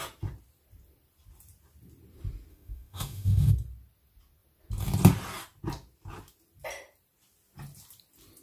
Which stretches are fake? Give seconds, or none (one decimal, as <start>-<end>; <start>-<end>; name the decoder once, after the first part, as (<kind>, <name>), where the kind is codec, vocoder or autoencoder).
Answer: 2.5-3.5 (autoencoder, DAC-VAE)